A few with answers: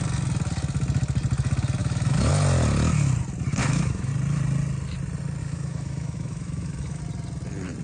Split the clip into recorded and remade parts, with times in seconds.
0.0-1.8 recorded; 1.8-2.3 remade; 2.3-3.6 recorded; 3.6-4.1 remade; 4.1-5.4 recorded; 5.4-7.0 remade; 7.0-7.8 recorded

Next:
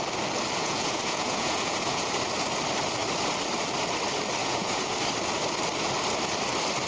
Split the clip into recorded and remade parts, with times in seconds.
0.0-0.6 recorded; 0.6-2.1 remade; 2.1-4.4 recorded; 4.4-4.9 remade; 4.9-6.9 recorded

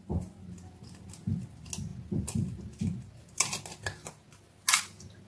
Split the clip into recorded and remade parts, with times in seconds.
0.0-5.3 recorded

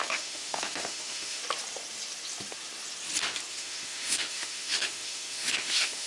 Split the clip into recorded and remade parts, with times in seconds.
0.0-1.4 remade; 1.4-3.5 recorded; 3.5-6.1 remade

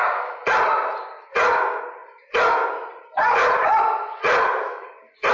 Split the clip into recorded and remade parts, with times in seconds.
0.0-5.3 recorded

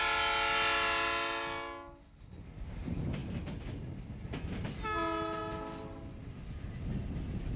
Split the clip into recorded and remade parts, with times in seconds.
0.0-7.6 recorded